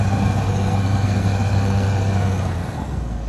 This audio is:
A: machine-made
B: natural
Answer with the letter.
A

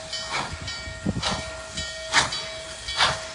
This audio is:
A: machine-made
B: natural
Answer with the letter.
B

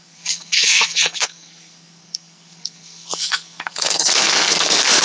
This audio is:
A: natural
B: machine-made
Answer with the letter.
B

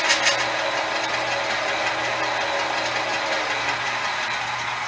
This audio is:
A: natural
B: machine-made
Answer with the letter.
A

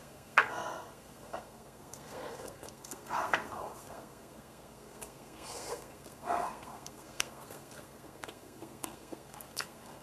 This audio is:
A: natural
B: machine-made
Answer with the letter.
B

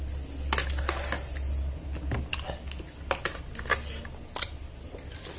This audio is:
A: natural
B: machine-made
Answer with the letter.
A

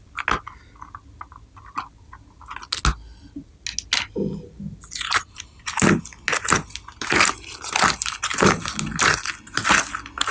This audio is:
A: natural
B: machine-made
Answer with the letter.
A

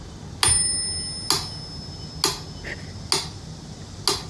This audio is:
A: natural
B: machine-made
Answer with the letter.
A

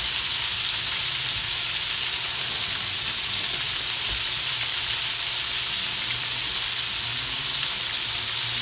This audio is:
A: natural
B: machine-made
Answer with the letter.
A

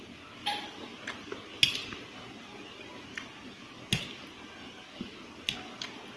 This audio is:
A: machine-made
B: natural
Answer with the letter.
B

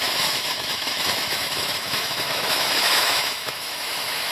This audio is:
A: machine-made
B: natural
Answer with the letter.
A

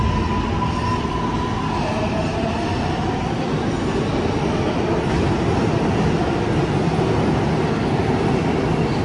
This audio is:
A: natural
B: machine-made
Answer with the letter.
A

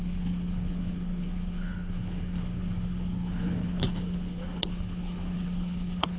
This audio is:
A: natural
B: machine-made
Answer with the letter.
B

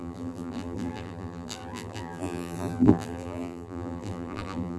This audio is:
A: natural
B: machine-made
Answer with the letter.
B